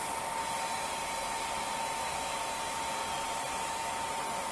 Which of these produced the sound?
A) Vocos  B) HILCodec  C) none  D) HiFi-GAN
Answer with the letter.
C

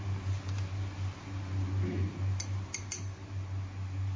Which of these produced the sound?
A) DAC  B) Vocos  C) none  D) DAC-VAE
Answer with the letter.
C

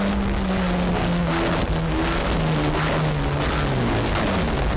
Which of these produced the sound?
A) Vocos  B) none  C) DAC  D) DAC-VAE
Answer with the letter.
B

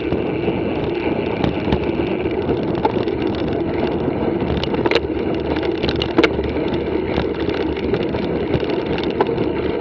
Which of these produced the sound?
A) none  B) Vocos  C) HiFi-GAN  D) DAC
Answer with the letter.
A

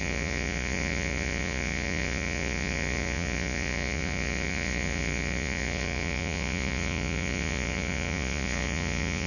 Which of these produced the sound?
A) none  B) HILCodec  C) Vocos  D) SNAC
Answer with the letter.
C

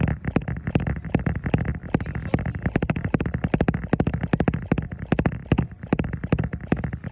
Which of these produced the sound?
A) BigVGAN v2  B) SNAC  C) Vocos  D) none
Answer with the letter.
D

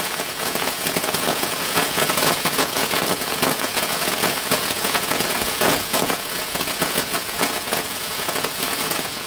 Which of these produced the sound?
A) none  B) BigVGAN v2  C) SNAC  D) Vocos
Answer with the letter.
D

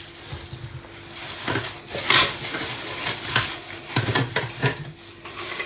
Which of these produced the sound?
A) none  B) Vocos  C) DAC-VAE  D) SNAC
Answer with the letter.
A